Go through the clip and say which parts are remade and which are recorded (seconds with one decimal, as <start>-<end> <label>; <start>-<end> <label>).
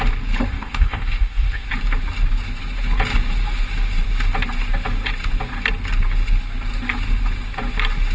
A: 0.0-0.5 recorded; 0.5-1.7 remade; 1.7-8.1 recorded